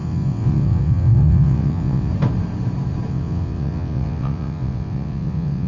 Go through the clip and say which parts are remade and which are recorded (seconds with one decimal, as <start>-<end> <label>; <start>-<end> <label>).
0.0-2.1 remade; 2.1-3.1 recorded; 3.1-5.7 remade